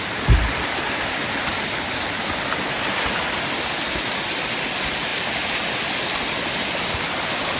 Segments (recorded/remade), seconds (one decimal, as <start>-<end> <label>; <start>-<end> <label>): 0.0-7.6 recorded